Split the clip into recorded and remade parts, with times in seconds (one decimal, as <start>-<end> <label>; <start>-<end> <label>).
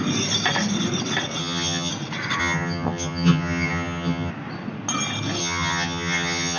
0.0-1.4 recorded; 1.4-1.9 remade; 1.9-2.4 recorded; 2.4-4.3 remade; 4.3-5.4 recorded; 5.4-6.6 remade